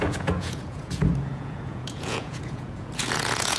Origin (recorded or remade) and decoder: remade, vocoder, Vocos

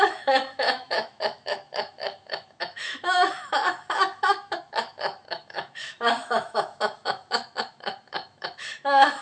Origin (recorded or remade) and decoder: remade, autoencoder, DAC-VAE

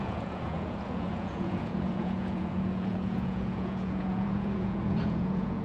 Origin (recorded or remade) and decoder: remade, vocoder, Vocos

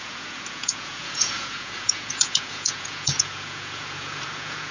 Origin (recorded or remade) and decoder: remade, vocoder, Vocos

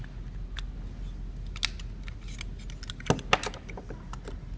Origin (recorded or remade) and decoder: recorded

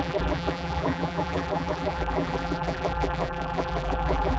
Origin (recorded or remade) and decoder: remade, vocoder, BigVGAN v2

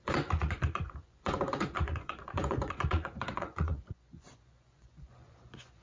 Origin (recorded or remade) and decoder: remade, vocoder, Vocos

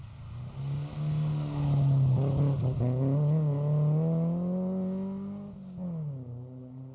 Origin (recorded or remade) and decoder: recorded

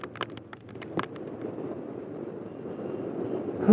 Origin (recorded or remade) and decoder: recorded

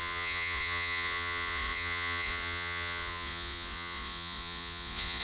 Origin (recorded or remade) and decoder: remade, vocoder, Vocos